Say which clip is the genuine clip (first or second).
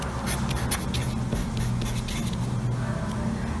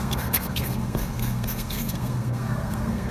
first